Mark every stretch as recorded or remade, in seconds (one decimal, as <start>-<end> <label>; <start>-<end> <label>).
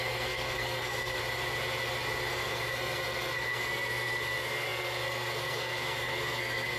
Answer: 0.0-1.2 remade; 1.2-2.3 recorded; 2.3-6.8 remade